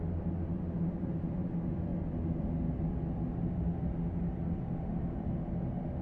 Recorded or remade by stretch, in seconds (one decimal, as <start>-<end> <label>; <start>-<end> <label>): 0.0-6.0 recorded